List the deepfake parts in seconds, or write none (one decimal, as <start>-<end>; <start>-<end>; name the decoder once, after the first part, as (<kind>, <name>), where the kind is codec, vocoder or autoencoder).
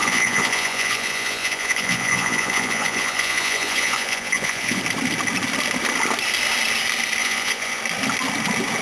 0.0-4.8 (vocoder, Vocos); 7.2-7.8